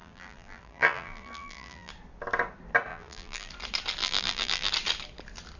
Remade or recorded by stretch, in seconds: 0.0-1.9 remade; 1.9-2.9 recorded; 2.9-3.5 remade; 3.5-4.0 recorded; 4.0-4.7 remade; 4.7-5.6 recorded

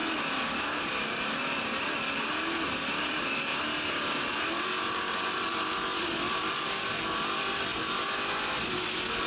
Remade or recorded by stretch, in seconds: 0.0-1.8 recorded; 1.8-3.5 remade; 3.5-4.6 recorded; 4.6-7.7 remade; 7.7-9.3 recorded

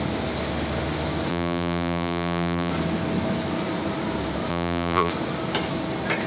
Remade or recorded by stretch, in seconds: 0.0-1.3 recorded; 1.3-2.7 remade; 2.7-4.5 recorded; 4.5-5.1 remade; 5.1-6.3 recorded

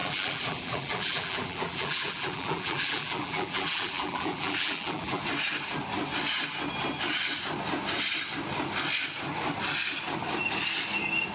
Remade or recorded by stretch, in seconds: 0.0-5.2 remade; 5.2-11.3 recorded

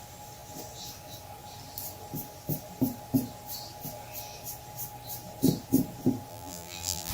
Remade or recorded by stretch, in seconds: 0.0-6.3 recorded; 6.3-7.1 remade

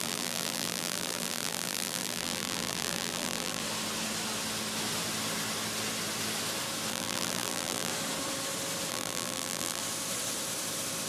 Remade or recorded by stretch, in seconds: 0.0-3.6 remade; 3.6-6.9 recorded; 6.9-7.9 remade; 7.9-8.9 recorded; 8.9-9.8 remade; 9.8-11.1 recorded

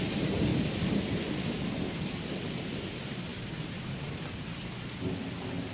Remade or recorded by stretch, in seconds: 0.0-0.5 recorded; 0.5-1.9 remade; 1.9-3.3 recorded; 3.3-5.7 remade